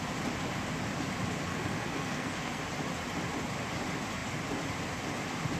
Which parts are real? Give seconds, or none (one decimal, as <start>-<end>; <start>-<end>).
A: 0.0-1.5; 2.6-5.6